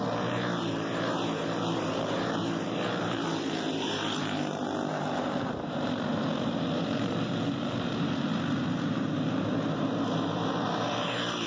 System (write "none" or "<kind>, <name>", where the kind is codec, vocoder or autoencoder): vocoder, BigVGAN v2